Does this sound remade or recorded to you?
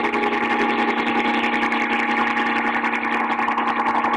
recorded